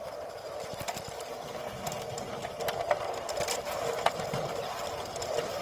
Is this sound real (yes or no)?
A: yes